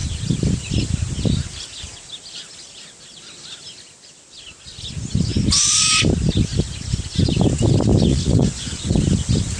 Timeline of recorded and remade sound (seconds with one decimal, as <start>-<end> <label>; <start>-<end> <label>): 0.0-8.1 recorded; 8.1-9.0 remade; 9.0-9.6 recorded